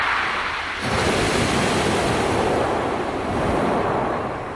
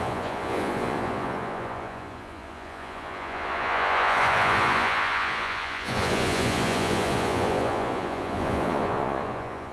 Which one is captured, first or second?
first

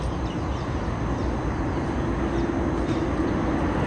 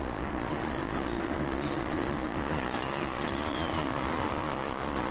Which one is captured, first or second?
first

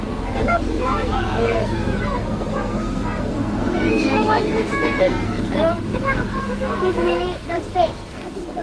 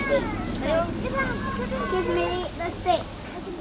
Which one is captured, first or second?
second